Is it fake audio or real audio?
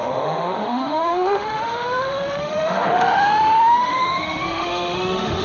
fake